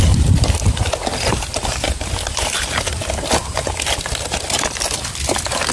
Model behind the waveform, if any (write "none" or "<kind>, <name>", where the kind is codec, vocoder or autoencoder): none